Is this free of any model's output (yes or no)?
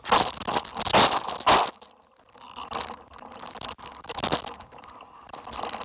yes